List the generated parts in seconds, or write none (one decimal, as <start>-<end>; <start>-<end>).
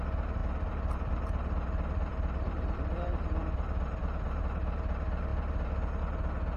0.4-4.4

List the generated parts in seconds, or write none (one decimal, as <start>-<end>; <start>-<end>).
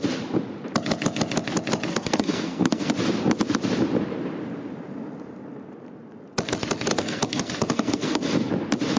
1.9-2.9; 6.9-8.5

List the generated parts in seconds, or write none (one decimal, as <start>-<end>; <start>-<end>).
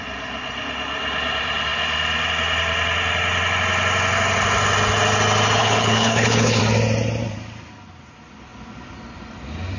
5.6-6.6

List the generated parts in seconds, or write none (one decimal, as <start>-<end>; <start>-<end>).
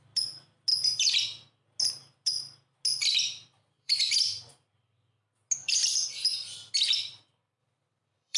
2.9-4.1; 5.6-6.7; 7.6-8.4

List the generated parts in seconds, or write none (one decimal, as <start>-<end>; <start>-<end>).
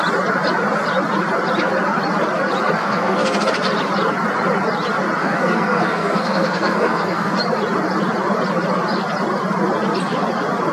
2.8-3.5; 5.2-7.4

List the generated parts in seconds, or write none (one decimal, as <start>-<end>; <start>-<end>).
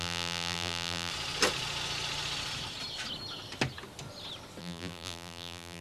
0.0-1.1; 4.6-5.8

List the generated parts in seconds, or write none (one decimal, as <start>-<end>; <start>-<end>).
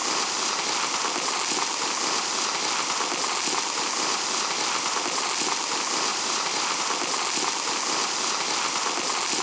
6.1-6.8